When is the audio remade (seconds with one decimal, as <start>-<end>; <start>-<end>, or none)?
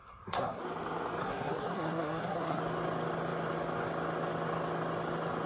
0.0-0.6; 1.2-2.6